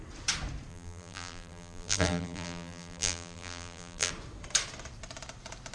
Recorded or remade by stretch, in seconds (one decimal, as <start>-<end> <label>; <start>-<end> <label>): 0.0-0.7 recorded; 0.7-4.1 remade; 4.1-5.7 recorded